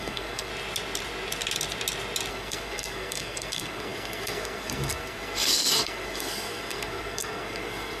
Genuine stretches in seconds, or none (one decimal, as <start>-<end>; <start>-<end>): 0.5-2.3